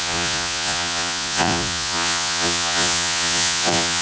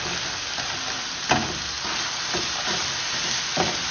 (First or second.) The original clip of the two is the second